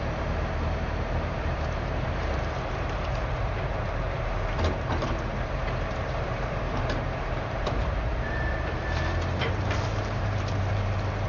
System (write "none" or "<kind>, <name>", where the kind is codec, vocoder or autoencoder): vocoder, BigVGAN v2